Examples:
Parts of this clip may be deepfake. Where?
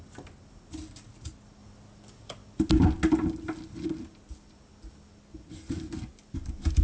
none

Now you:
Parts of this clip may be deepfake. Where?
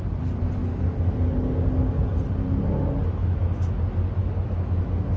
3.2-3.8 (autoencoder, DAC-VAE); 4.2-5.2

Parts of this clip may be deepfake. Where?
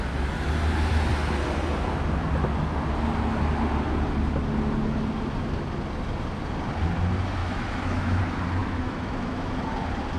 7.4-8.2 (autoencoder, DAC-VAE); 8.6-9.6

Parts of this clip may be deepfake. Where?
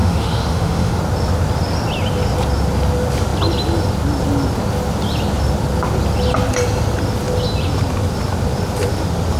0.0-1.0 (autoencoder, DAC-VAE)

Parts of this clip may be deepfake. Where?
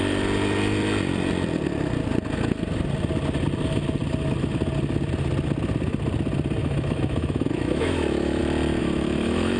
6.6-8.4 (autoencoder, DAC-VAE); 8.8-9.6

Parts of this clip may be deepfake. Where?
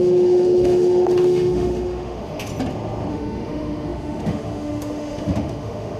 0.0-2.5 (autoencoder, DAC-VAE); 3.1-6.0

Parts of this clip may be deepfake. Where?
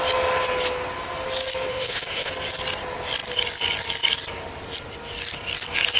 1.7-2.3 (autoencoder, DAC-VAE)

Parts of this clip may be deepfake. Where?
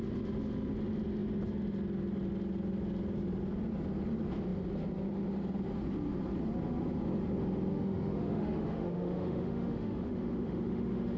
7.7-11.2 (autoencoder, DAC-VAE)